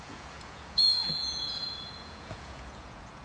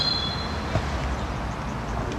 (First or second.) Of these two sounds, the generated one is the first